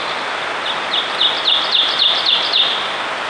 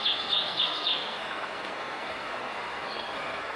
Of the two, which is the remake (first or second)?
second